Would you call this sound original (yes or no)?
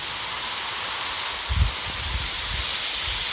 yes